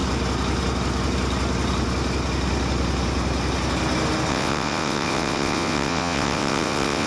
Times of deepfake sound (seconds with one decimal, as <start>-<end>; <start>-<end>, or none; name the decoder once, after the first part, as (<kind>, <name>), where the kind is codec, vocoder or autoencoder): 4.3-7.1 (vocoder, WaveNeXt)